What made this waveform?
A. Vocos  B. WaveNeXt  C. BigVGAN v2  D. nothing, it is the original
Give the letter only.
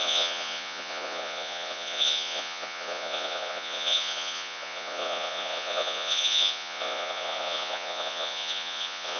A